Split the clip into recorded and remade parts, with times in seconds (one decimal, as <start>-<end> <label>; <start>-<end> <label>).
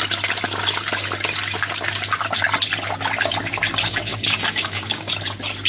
0.0-4.1 recorded; 4.1-5.1 remade; 5.1-5.7 recorded